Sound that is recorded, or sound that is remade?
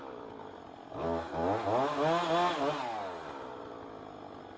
recorded